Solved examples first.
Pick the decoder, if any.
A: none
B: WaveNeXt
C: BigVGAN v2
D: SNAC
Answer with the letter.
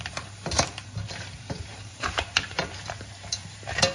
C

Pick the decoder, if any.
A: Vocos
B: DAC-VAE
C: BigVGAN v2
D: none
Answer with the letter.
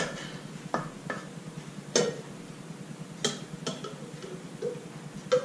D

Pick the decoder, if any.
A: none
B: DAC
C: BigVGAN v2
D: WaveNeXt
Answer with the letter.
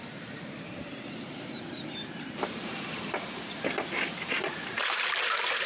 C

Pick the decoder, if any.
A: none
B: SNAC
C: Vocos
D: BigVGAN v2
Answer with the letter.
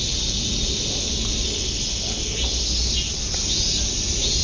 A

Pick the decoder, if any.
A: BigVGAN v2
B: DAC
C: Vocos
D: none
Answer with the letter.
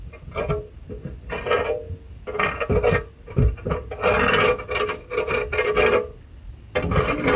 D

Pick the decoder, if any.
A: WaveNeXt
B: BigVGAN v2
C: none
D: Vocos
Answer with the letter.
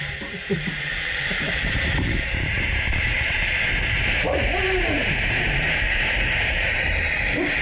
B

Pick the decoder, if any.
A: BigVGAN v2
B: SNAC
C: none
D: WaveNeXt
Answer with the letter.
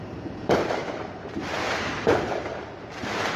A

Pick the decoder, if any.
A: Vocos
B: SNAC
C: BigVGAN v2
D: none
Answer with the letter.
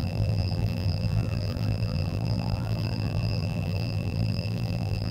C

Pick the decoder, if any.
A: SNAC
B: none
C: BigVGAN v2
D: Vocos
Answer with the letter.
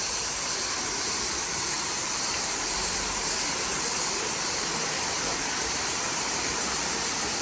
C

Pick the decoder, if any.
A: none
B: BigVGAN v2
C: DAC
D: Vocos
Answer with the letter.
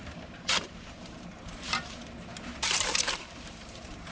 B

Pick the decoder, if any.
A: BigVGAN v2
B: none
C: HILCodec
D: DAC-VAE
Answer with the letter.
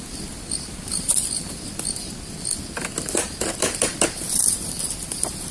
A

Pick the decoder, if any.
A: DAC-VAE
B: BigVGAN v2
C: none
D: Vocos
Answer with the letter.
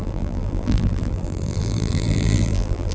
B